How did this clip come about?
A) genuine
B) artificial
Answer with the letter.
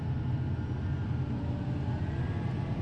A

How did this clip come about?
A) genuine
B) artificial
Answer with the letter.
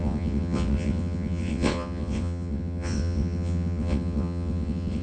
B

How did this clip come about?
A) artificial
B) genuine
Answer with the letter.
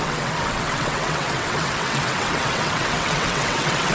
A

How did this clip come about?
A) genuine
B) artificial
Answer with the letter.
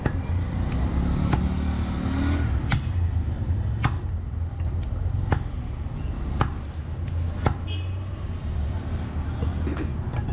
A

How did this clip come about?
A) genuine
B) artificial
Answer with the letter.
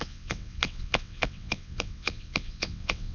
B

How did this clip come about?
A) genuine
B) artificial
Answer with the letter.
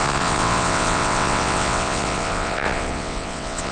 B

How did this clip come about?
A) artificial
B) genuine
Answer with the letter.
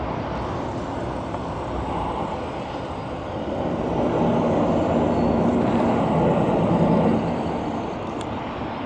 B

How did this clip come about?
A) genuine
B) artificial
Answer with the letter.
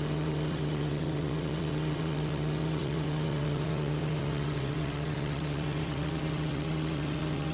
B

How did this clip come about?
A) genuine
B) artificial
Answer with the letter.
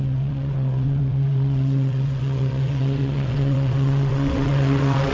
B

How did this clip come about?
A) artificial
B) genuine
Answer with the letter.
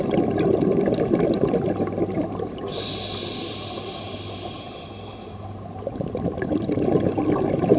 B